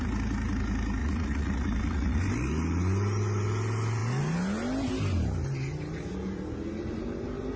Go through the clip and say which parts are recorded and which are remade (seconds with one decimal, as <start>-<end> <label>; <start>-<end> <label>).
0.0-1.0 recorded; 1.0-2.2 remade; 2.2-7.6 recorded